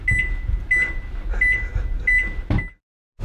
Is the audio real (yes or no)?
yes